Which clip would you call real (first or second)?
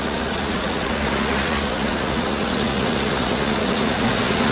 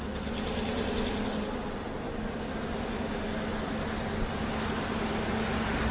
second